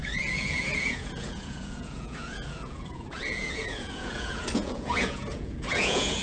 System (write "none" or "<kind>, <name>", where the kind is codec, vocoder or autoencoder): vocoder, Vocos